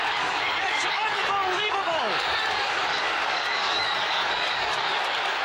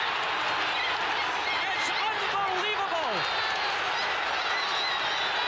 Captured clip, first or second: second